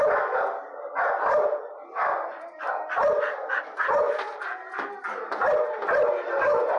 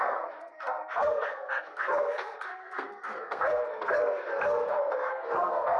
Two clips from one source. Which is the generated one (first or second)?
second